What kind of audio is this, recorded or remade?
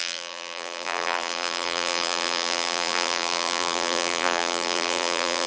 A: remade